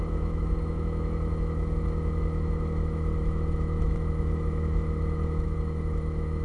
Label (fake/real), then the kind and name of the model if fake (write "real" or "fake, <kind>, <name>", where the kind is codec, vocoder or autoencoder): fake, autoencoder, DAC-VAE